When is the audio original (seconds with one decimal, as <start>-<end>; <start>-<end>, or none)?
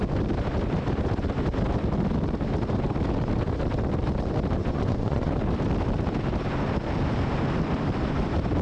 0.0-4.6; 5.3-8.6